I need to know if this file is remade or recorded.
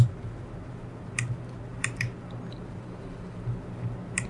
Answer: recorded